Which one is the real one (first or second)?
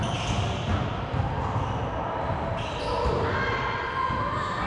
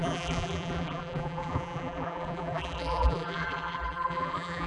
first